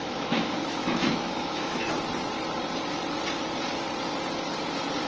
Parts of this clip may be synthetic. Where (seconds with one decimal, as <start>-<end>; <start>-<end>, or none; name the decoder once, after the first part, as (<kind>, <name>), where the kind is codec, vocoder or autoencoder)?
0.0-1.8 (autoencoder, DAC-VAE)